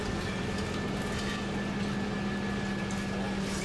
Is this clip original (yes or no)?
yes